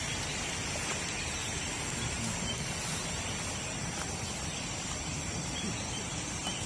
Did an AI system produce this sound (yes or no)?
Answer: no